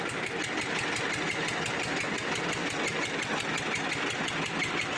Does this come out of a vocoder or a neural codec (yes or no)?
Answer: no